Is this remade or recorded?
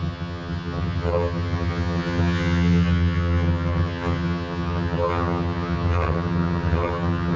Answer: remade